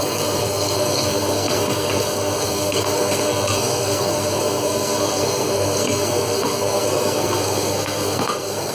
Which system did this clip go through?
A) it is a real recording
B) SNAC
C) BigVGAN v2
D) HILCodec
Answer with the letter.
B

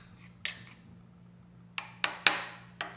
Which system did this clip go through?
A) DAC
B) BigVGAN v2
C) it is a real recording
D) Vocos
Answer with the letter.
C